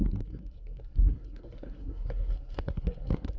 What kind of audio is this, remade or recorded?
remade